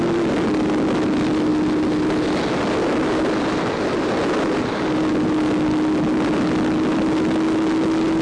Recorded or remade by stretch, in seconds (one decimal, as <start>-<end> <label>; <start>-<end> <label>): 0.0-8.2 recorded